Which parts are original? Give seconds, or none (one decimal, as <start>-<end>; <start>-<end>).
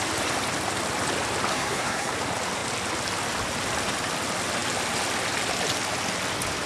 0.0-1.5; 2.1-6.7